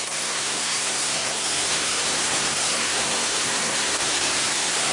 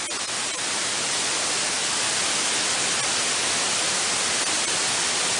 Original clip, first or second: second